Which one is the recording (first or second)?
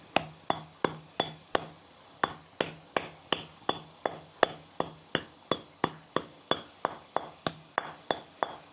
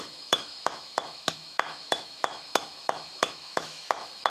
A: first